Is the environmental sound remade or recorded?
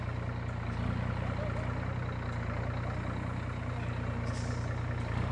recorded